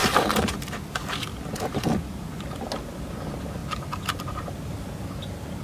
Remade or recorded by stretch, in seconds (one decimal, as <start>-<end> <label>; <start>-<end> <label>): 0.0-1.4 remade; 1.4-5.6 recorded